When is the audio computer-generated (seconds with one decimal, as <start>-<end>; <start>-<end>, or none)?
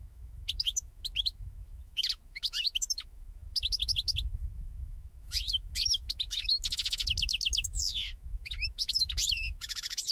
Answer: 0.0-10.1